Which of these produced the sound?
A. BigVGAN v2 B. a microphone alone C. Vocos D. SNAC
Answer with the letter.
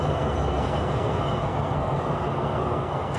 D